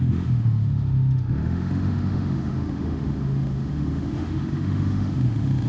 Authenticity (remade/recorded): remade